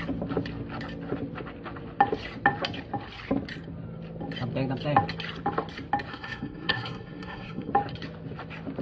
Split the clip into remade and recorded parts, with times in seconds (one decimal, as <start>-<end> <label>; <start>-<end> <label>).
0.0-6.1 recorded; 6.1-7.7 remade; 7.7-8.8 recorded